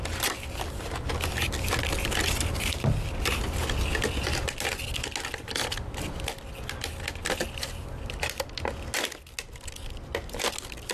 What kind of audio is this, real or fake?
real